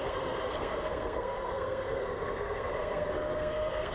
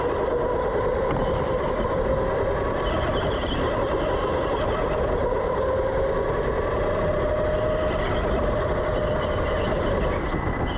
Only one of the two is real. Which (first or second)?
second